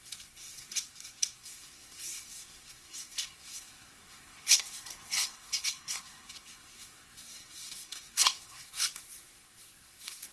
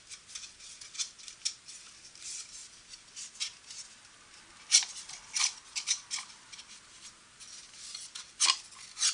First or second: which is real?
second